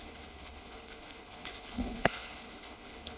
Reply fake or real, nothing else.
fake